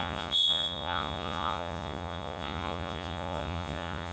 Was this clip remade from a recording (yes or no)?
yes